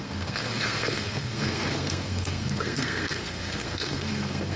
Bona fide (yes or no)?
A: no